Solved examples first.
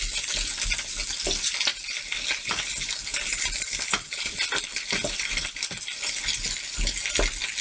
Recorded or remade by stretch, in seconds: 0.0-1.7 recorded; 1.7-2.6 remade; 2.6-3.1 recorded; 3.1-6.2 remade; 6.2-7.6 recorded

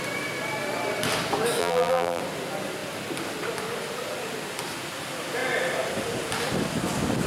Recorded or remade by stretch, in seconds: 0.0-1.6 recorded; 1.6-2.2 remade; 2.2-7.3 recorded

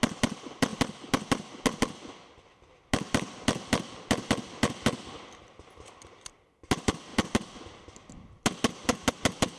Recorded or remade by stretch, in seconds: 0.0-9.6 recorded